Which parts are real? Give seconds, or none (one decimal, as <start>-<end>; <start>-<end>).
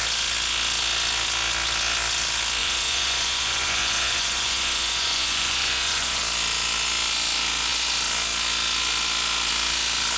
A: 0.0-2.6; 6.2-10.2